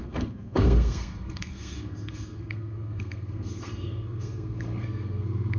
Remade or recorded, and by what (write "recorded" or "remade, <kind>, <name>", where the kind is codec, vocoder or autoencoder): remade, codec, SNAC